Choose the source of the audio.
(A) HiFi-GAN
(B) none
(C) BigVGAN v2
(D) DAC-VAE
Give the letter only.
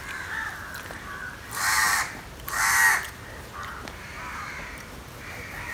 C